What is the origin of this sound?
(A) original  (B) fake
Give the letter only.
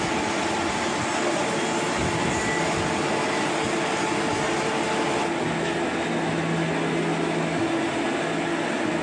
A